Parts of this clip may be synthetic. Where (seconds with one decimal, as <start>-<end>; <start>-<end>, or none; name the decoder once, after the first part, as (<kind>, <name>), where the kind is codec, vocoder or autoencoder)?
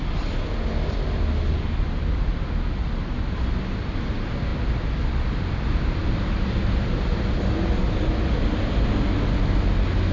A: none